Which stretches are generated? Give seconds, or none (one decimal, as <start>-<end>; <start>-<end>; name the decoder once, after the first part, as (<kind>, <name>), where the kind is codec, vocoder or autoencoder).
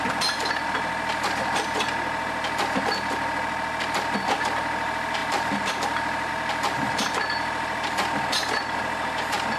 5.2-6.3 (vocoder, BigVGAN v2)